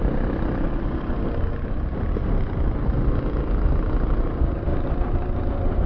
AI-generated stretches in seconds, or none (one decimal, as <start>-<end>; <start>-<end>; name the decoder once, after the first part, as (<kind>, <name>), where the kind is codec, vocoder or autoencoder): 4.7-5.9 (vocoder, BigVGAN v2)